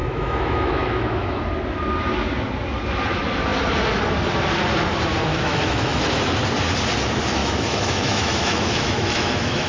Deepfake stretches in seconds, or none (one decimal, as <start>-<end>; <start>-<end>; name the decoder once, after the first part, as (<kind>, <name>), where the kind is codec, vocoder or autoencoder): 0.0-1.4 (autoencoder, DAC-VAE); 5.3-6.0; 7.4-9.7